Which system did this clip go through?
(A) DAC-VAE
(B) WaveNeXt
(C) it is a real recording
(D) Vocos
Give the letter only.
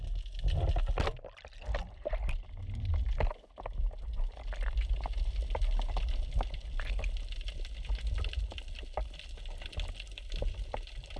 C